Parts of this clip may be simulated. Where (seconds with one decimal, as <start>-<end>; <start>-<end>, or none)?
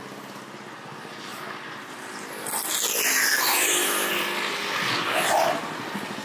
3.5-4.1